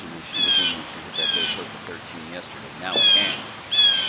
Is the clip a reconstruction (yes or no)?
no